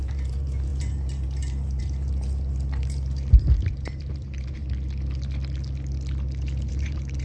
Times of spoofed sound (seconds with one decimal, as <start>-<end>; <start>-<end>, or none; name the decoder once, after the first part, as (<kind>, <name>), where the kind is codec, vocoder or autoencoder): 0.0-4.6 (vocoder, BigVGAN v2); 6.7-7.2